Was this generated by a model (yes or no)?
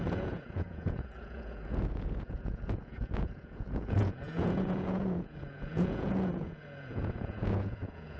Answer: yes